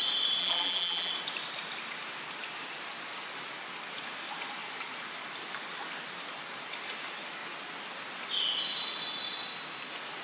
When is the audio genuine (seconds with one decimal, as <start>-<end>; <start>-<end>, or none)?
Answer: 0.0-0.4; 1.1-10.2